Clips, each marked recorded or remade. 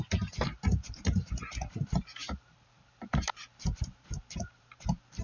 remade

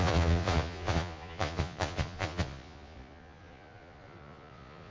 remade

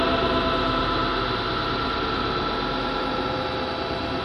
recorded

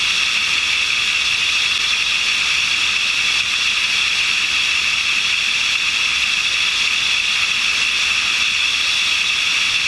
recorded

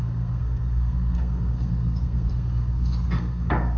remade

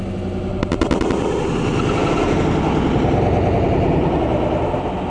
recorded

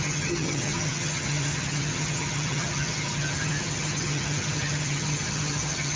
remade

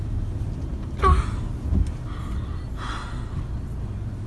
recorded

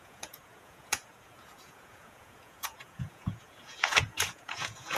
remade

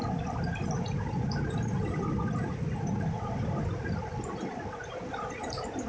recorded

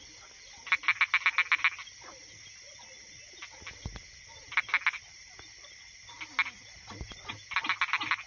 recorded